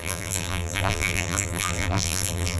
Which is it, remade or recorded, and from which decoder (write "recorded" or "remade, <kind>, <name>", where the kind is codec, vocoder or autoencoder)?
remade, vocoder, BigVGAN v2